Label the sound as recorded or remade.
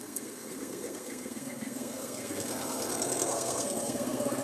remade